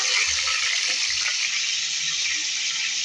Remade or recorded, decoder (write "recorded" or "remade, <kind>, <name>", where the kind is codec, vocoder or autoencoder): recorded